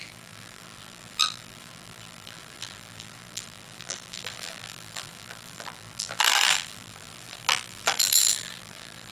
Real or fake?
fake